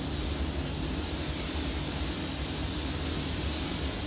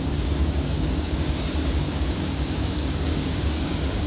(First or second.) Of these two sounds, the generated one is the second